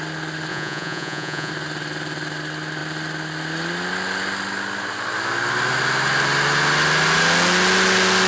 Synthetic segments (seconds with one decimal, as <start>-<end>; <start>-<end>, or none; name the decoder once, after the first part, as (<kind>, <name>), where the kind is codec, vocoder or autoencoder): 0.5-1.5 (vocoder, Vocos)